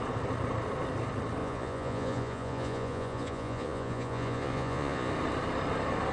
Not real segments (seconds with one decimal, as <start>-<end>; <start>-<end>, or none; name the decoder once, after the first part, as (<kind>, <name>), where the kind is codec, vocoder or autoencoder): 1.4-5.1 (vocoder, Vocos)